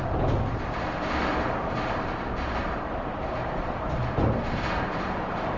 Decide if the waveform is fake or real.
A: fake